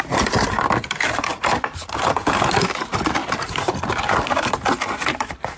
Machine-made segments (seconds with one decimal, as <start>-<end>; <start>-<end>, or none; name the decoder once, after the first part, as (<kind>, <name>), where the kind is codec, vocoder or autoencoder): none

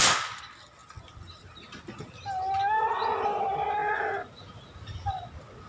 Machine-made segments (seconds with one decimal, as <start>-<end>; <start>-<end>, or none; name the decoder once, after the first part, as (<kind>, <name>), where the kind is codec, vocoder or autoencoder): none